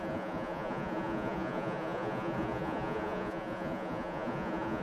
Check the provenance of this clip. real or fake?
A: fake